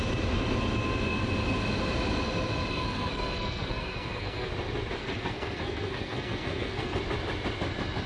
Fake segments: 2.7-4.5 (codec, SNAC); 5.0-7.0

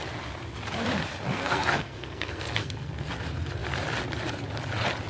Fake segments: 1.3-3.1 (codec, SNAC)

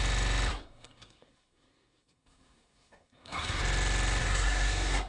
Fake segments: 0.5-3.6 (codec, SNAC); 4.2-5.1

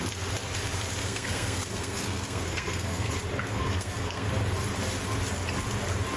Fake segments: 1.0-3.1 (codec, SNAC); 3.5-4.3

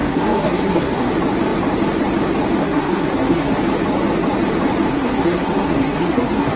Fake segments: 0.0-1.1 (codec, SNAC); 2.6-3.6; 4.9-6.6

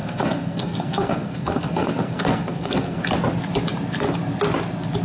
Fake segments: 0.0-3.0 (codec, SNAC)

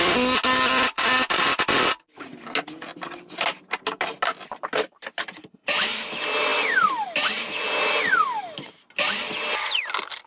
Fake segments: none